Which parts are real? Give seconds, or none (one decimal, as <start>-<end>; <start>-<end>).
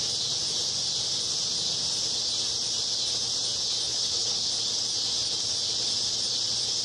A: 0.0-3.9; 4.5-6.8